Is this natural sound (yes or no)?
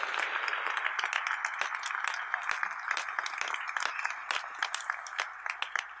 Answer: yes